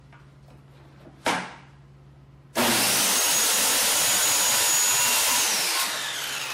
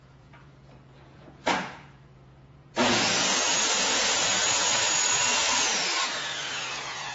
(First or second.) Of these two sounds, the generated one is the second